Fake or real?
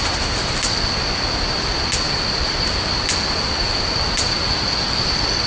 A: real